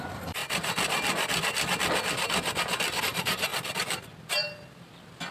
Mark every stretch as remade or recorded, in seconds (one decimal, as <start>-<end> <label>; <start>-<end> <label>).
0.0-0.4 remade; 0.4-3.0 recorded; 3.0-3.5 remade; 3.5-5.3 recorded